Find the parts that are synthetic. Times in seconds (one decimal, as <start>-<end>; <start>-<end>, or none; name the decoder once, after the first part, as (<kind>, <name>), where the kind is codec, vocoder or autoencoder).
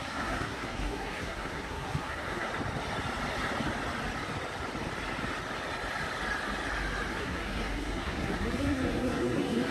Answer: 0.0-2.5 (codec, SNAC); 7.1-9.7